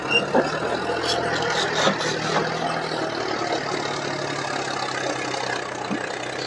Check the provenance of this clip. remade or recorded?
recorded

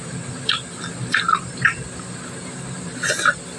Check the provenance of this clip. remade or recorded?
recorded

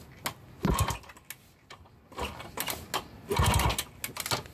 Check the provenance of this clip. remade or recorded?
recorded